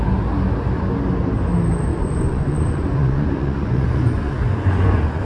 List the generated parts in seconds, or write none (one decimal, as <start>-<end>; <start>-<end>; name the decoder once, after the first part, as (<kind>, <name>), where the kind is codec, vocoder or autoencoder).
1.9-5.2 (vocoder, Vocos)